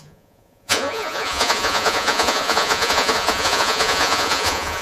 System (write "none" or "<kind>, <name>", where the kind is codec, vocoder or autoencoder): vocoder, Vocos